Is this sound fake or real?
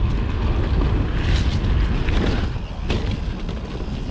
real